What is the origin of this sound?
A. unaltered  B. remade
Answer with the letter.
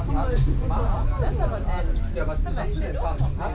A